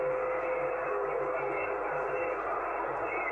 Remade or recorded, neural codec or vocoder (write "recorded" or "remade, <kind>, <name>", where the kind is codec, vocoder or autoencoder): recorded